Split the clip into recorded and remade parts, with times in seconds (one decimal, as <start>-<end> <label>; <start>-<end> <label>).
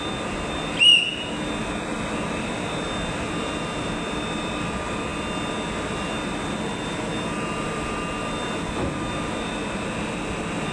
0.0-10.7 recorded